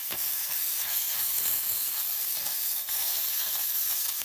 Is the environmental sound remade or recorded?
remade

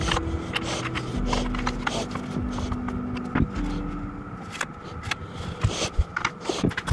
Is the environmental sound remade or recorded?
recorded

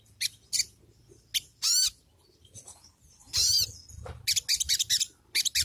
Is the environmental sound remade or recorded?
recorded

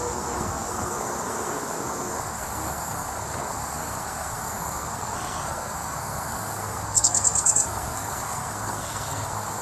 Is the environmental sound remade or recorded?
remade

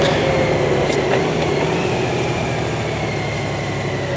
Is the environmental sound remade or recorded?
recorded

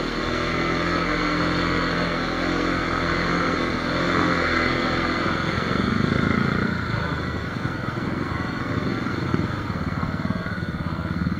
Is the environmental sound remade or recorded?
remade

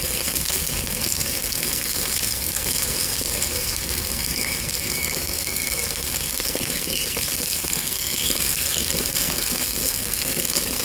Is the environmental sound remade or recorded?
remade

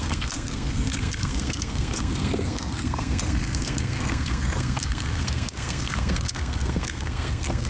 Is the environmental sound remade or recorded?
remade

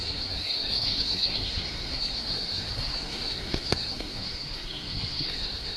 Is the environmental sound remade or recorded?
remade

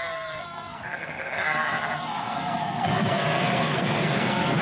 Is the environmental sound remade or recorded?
remade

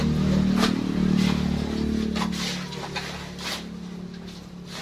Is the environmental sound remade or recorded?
recorded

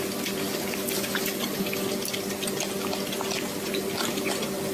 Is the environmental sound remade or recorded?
recorded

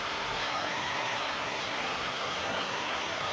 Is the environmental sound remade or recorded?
remade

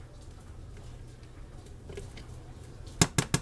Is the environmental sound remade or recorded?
recorded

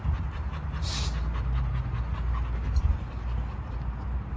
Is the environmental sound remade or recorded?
recorded